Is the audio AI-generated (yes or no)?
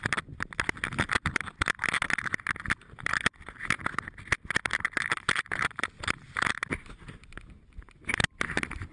no